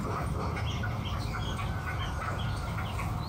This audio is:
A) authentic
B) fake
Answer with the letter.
A